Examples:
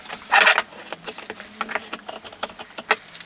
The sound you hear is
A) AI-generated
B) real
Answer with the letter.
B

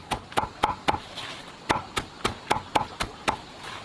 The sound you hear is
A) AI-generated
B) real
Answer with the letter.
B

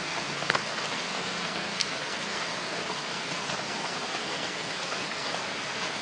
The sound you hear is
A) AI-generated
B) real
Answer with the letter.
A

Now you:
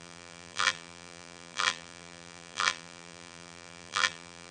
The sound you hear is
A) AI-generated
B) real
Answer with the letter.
A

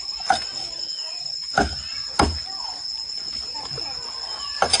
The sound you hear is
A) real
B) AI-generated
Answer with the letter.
A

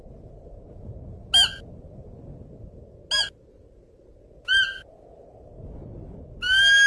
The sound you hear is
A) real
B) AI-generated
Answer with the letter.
A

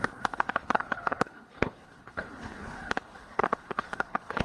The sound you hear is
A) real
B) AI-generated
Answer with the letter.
B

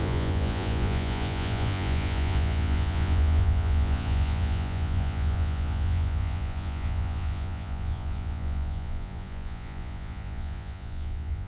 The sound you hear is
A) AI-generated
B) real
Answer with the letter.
A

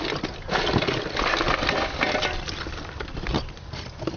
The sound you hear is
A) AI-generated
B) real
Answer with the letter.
B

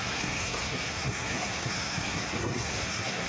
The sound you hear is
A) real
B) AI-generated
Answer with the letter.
B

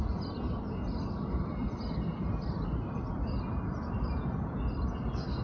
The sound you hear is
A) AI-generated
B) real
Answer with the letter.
B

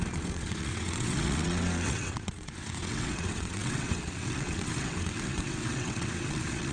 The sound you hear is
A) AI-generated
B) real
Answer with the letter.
A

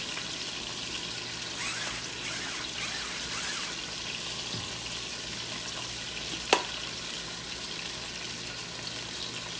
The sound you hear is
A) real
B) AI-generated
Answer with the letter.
A